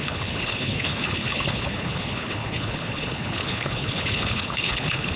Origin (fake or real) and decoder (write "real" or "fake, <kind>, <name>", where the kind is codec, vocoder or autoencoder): fake, codec, HILCodec